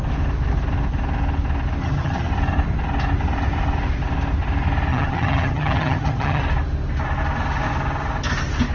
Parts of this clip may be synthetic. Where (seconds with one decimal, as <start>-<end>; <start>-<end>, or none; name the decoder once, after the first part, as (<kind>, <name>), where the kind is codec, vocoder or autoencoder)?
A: 1.8-2.3 (vocoder, HiFi-GAN); 4.9-6.4